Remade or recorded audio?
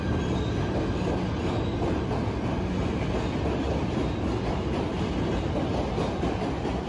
recorded